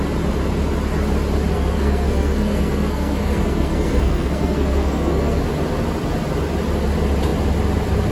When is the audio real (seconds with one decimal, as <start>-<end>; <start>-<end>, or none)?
0.0-1.5; 5.4-8.1